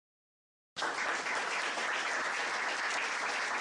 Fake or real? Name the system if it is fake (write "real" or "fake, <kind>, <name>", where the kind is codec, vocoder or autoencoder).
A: real